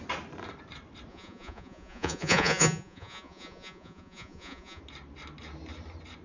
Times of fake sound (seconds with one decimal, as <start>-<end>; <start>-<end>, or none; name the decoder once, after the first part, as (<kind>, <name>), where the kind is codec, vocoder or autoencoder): 1.1-4.8 (vocoder, Vocos)